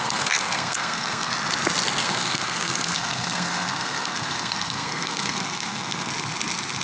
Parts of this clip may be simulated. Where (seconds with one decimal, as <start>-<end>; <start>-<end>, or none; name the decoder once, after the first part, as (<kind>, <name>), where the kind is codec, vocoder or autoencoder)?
0.0-1.3 (codec, SNAC); 2.0-6.1